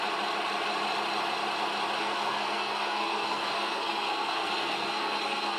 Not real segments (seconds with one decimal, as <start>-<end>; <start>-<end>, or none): 2.0-5.6